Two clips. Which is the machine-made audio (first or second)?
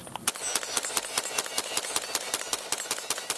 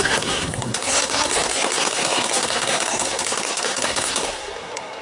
second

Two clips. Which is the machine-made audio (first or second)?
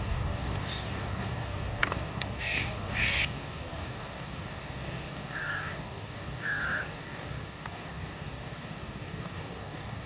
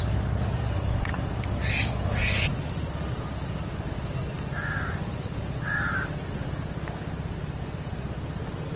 first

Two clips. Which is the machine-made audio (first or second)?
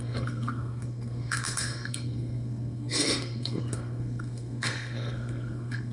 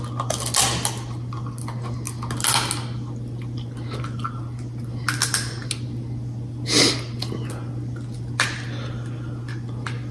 first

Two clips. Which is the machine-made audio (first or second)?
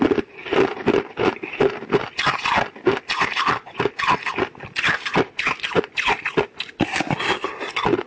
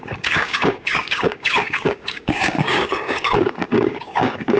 second